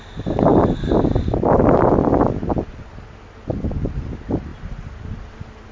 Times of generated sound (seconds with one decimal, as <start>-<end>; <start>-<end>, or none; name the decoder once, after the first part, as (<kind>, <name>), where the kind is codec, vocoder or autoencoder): none